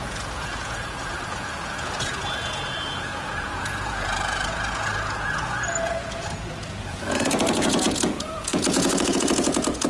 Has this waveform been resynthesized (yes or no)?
yes